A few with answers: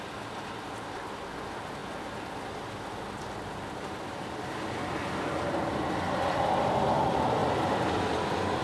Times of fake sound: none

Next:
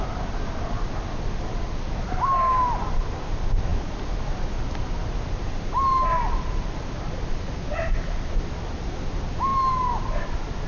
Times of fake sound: none

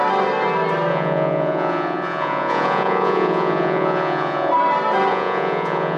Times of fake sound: 0.9-4.5 (vocoder, Vocos); 5.1-6.0